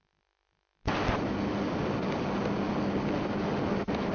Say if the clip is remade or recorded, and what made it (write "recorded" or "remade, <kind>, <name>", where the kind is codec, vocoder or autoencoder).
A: recorded